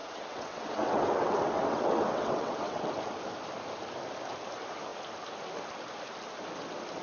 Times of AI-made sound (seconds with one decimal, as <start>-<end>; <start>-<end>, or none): 0.0-2.9